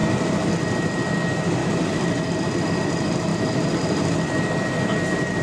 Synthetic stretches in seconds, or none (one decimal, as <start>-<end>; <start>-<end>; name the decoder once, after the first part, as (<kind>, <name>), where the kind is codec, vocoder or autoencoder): 0.0-0.5 (vocoder, BigVGAN v2); 1.6-2.4; 3.3-5.4